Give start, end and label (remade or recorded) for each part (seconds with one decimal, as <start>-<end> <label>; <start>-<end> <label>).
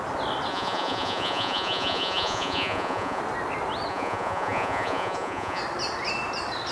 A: 0.0-0.5 recorded; 0.5-3.2 remade; 3.2-3.9 recorded; 3.9-5.6 remade; 5.6-6.7 recorded